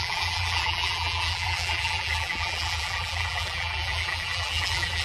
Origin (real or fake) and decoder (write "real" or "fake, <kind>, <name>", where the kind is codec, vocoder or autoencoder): fake, vocoder, BigVGAN v2